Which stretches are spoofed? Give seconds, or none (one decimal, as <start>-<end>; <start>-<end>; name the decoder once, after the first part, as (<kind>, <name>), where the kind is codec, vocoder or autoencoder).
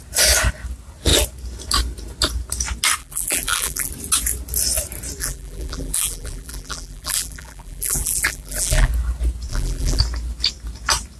3.0-3.9 (vocoder, BigVGAN v2); 5.2-8.9; 9.5-10.0